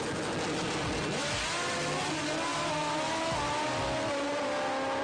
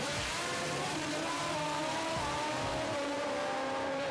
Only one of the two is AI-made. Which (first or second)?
second